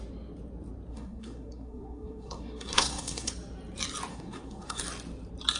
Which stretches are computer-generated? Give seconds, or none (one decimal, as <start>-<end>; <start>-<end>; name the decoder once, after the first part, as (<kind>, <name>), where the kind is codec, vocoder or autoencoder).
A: 0.9-3.3 (codec, SNAC); 4.1-4.8